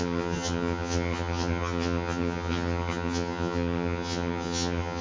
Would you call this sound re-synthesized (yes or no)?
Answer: yes